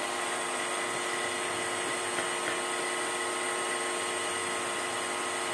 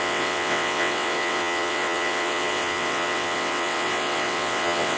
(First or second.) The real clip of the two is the first